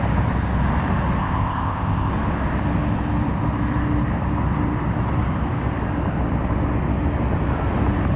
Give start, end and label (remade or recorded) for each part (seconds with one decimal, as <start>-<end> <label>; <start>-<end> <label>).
0.0-1.2 recorded; 1.2-2.1 remade; 2.1-8.2 recorded